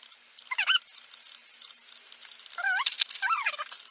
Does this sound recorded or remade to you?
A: recorded